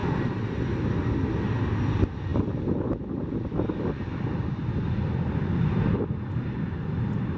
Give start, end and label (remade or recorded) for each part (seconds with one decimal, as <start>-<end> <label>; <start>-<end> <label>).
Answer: 0.0-7.4 recorded